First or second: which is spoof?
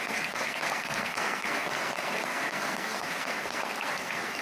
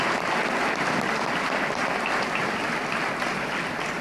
first